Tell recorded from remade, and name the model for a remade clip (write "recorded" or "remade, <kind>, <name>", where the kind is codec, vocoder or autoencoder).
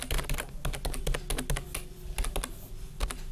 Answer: recorded